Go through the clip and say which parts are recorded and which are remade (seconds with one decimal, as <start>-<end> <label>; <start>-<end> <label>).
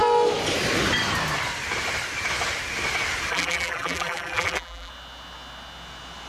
0.0-3.3 recorded; 3.3-4.9 remade; 4.9-6.3 recorded